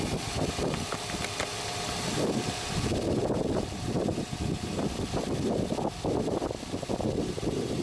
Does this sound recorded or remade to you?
recorded